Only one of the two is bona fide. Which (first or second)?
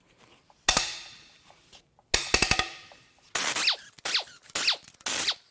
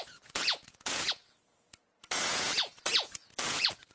first